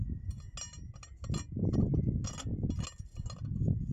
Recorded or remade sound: recorded